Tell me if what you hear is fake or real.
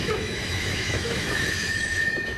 fake